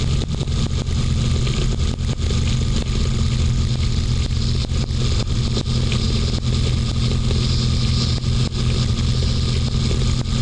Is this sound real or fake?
real